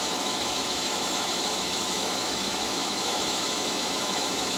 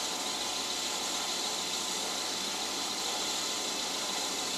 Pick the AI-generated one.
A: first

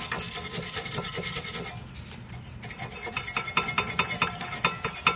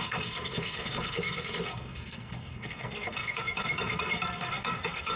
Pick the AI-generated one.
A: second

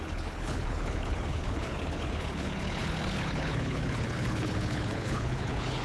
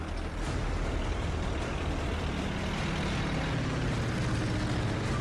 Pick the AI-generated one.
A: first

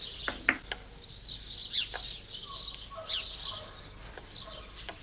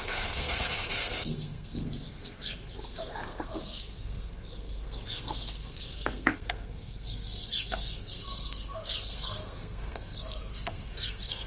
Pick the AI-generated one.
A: second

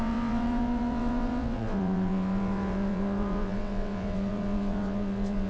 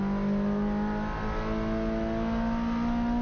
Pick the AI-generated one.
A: first